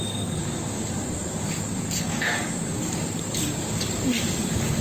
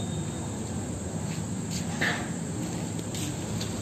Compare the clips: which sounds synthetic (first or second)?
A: first